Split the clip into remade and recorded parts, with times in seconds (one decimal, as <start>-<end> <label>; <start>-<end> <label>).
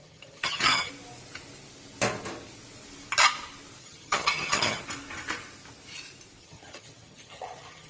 0.0-0.9 remade; 0.9-3.8 recorded; 3.8-4.8 remade; 4.8-6.4 recorded; 6.4-7.9 remade